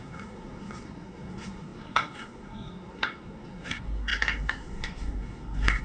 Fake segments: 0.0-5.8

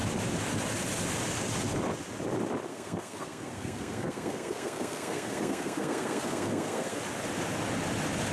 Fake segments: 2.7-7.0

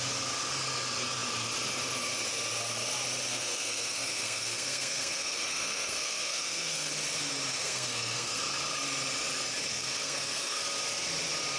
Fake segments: 3.3-6.9; 7.5-8.4; 9.7-10.6

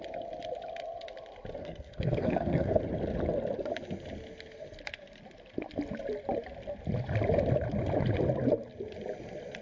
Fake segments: 1.6-2.8

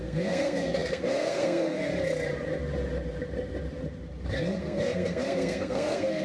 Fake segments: 0.0-1.9; 4.6-6.2

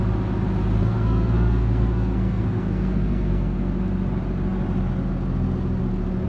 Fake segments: 0.8-3.7

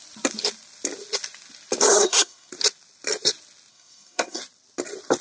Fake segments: 1.9-2.5; 3.7-4.4

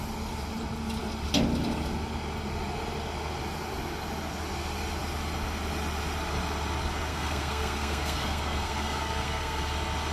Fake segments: 7.1-9.6